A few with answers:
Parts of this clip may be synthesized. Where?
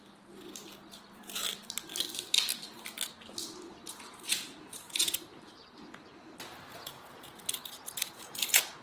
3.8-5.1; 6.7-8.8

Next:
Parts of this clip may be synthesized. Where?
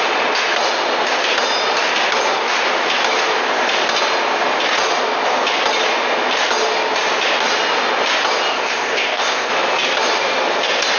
8.5-9.5